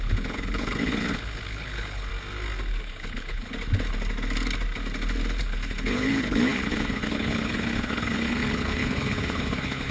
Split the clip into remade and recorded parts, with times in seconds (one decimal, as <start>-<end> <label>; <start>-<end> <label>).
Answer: 0.0-2.1 remade; 2.1-2.8 recorded; 2.8-3.5 remade; 3.5-5.4 recorded; 5.4-9.9 remade